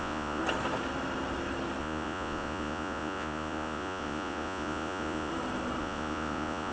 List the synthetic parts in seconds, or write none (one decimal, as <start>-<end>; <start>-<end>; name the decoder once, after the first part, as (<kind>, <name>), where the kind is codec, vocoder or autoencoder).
0.0-0.4 (vocoder, Vocos); 1.8-5.3; 5.8-6.7